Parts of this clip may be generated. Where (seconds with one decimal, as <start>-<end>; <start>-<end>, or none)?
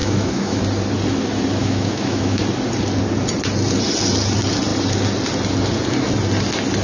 0.0-0.6; 1.6-2.4